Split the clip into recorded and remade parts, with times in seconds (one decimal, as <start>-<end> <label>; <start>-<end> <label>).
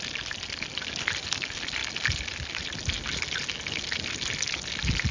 0.0-5.1 recorded